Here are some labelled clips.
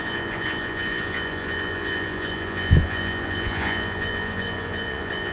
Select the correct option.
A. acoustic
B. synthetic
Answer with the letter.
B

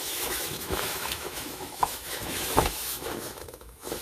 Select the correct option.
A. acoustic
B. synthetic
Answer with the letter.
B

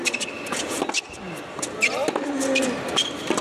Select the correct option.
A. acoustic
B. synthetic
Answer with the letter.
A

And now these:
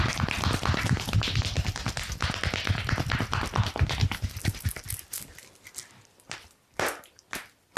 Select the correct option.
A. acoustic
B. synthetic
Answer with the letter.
A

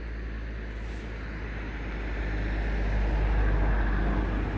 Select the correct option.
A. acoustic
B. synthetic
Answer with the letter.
A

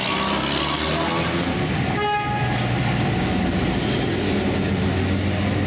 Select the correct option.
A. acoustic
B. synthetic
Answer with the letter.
A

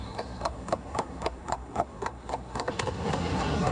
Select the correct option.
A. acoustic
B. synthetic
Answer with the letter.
B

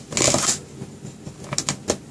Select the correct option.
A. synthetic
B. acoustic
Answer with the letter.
B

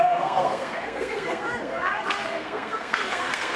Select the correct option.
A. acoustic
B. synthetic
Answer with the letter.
B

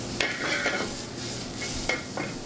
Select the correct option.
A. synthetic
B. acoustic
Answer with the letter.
B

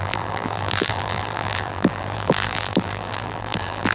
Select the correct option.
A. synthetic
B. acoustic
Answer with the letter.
A